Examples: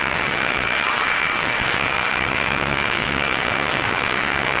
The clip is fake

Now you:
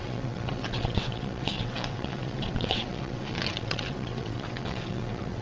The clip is fake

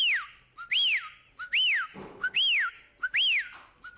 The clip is real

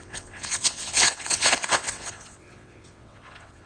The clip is fake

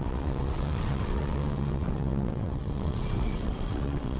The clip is fake